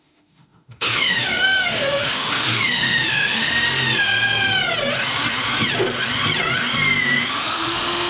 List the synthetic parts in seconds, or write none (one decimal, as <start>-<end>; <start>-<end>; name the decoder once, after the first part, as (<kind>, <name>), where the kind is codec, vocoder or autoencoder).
0.0-3.5 (autoencoder, DAC-VAE); 7.3-8.1